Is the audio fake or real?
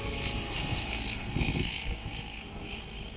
fake